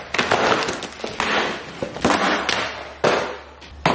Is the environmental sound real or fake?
real